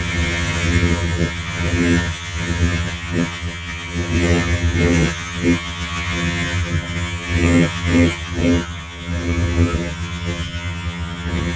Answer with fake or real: fake